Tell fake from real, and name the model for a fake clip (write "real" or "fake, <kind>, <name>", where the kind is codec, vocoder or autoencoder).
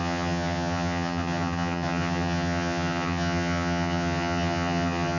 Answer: fake, vocoder, HiFi-GAN